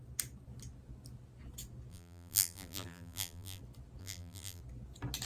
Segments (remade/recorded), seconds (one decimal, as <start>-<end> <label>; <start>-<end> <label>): 0.0-1.9 recorded; 1.9-3.6 remade; 3.6-4.0 recorded; 4.0-4.6 remade; 4.6-5.3 recorded